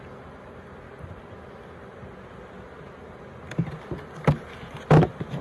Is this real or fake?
real